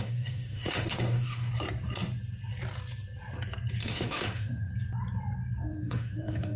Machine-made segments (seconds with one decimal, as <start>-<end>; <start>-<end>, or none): 0.0-1.5; 3.8-4.7; 5.6-6.6